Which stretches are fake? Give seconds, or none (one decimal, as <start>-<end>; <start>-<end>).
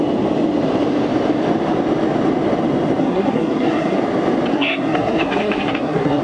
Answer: 3.0-4.0; 4.5-6.2